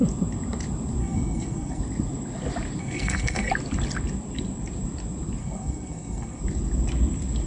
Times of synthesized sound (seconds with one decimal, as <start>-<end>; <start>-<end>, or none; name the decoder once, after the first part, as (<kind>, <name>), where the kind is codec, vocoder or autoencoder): 1.0-1.8 (codec, SNAC); 2.8-3.5; 5.4-6.4